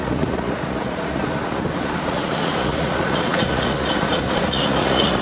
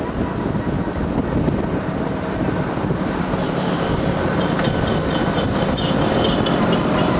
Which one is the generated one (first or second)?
first